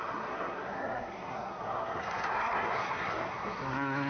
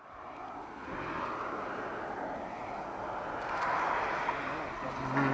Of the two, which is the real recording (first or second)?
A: second